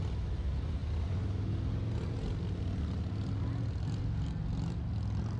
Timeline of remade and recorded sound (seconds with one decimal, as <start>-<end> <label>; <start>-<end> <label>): 0.0-5.4 recorded

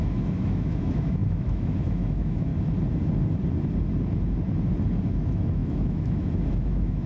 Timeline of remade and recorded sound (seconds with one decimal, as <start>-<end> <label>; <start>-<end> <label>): 0.0-2.5 remade; 2.5-5.1 recorded; 5.1-7.1 remade

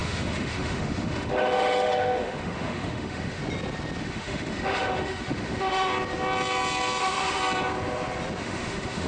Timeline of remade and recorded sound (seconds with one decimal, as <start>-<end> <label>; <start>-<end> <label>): 0.0-3.4 remade; 3.4-4.0 recorded; 4.0-5.9 remade; 5.9-7.0 recorded; 7.0-7.4 remade; 7.4-8.4 recorded; 8.4-9.1 remade

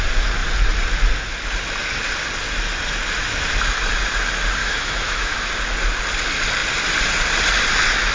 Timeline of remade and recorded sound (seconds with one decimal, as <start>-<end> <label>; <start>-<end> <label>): 0.0-4.6 recorded; 4.6-5.5 remade; 5.5-8.1 recorded

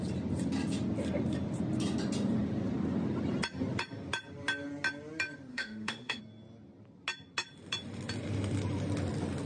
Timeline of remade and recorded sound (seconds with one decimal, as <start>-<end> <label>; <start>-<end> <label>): 0.0-5.5 recorded; 5.5-6.2 remade; 6.2-9.5 recorded